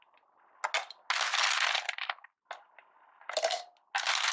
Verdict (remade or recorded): recorded